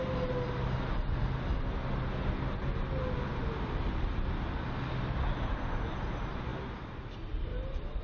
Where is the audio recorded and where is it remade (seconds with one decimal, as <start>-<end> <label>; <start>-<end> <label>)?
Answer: 0.0-8.0 recorded